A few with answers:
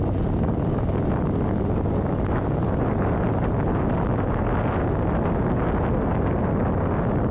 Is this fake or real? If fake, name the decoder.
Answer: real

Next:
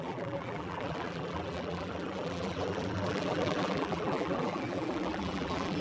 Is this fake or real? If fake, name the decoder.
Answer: fake, vocoder, BigVGAN v2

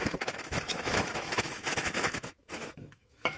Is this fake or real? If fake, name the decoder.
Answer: fake, autoencoder, DAC-VAE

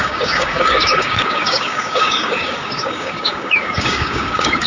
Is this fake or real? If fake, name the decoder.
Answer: fake, codec, DAC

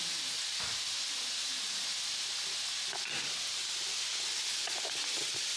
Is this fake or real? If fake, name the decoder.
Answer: real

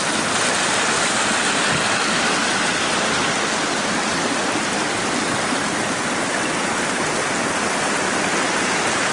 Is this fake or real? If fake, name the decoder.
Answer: real